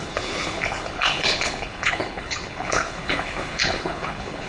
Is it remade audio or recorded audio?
remade